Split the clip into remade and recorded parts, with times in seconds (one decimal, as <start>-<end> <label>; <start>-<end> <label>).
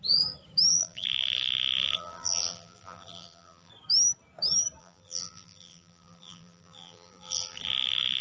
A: 0.0-0.7 recorded; 0.7-3.7 remade; 3.7-4.8 recorded; 4.8-8.2 remade